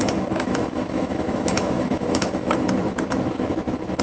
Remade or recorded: remade